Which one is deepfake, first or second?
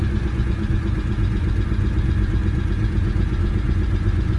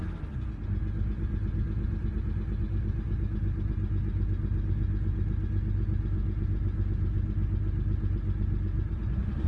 first